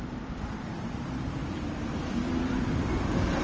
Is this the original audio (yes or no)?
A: no